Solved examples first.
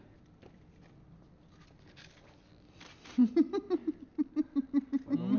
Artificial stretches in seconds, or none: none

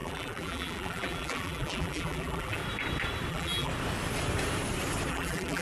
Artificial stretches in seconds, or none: 0.0-2.6 (vocoder, BigVGAN v2); 3.3-3.7; 5.1-5.6

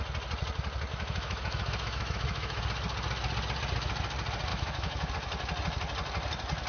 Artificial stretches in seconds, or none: 0.9-2.6 (autoencoder, DAC-VAE); 4.5-5.1

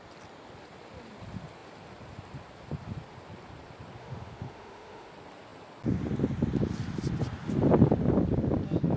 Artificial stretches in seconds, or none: 4.0-5.1 (autoencoder, DAC-VAE)